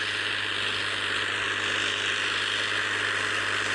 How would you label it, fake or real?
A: real